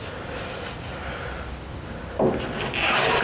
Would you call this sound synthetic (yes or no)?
no